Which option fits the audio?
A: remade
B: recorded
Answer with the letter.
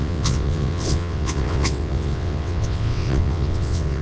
A